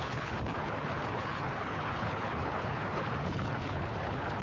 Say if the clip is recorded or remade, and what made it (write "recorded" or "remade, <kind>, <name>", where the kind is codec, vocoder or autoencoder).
remade, codec, HILCodec